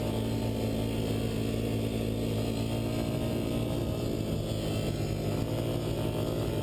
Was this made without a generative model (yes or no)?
yes